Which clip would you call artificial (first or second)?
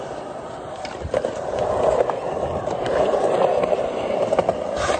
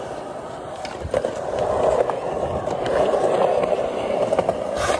first